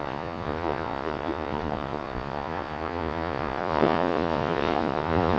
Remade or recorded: remade